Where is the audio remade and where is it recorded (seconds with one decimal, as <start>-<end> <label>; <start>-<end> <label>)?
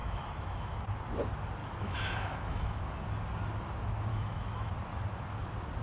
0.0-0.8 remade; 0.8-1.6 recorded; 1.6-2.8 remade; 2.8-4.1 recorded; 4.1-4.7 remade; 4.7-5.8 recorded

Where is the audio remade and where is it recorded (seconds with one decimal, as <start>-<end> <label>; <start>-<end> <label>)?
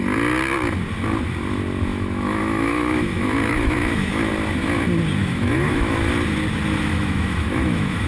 0.0-1.9 recorded; 1.9-4.3 remade; 4.3-5.2 recorded; 5.2-6.1 remade; 6.1-6.9 recorded; 6.9-8.1 remade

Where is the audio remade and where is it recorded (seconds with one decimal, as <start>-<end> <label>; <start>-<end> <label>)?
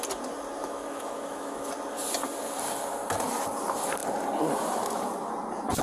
0.0-0.6 recorded; 0.6-1.7 remade; 1.7-5.8 recorded